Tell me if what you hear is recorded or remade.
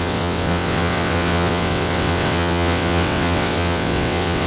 remade